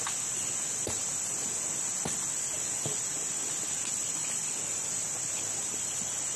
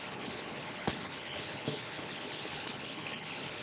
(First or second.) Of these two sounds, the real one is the first